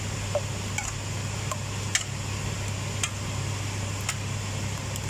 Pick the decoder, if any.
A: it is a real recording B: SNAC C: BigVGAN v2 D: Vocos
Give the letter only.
A